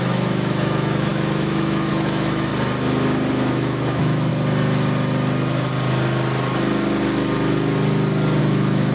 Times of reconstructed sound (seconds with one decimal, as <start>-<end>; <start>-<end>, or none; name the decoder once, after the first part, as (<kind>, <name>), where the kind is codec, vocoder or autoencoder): 0.0-2.5 (autoencoder, DAC-VAE); 3.3-4.3; 8.4-8.9